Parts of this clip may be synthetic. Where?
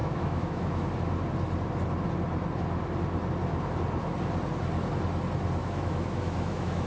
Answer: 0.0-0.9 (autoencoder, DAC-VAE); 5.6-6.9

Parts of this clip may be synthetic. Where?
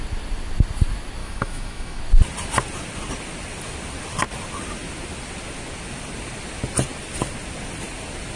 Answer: 1.2-2.0 (autoencoder, DAC-VAE)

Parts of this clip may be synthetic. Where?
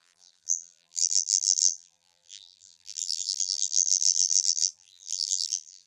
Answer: 0.0-5.9 (vocoder, BigVGAN v2)